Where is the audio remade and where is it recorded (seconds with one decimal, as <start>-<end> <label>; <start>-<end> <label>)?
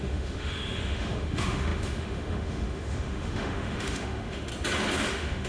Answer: 0.0-4.5 remade; 4.5-5.1 recorded; 5.1-5.5 remade